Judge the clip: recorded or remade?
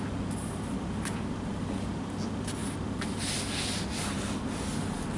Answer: recorded